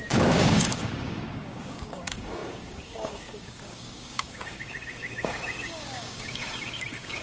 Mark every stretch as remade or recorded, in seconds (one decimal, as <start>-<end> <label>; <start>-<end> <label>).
0.0-7.2 remade